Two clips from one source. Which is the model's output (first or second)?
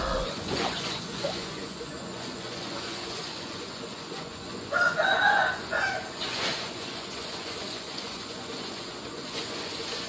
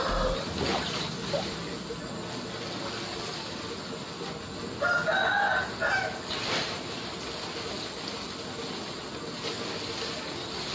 first